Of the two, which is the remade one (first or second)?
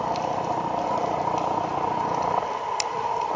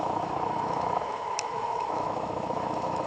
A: second